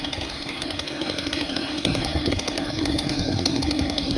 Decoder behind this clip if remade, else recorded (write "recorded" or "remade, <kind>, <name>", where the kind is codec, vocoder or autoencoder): remade, codec, SNAC